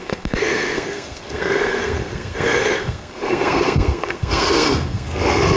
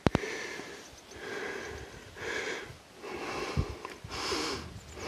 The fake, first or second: first